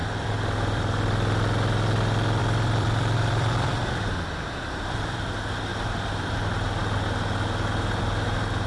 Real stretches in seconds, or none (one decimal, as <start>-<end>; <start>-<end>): 0.8-2.4; 5.3-5.7; 6.3-8.7